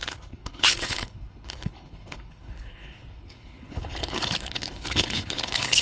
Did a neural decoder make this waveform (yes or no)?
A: yes